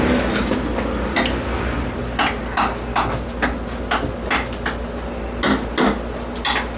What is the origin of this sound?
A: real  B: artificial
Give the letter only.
A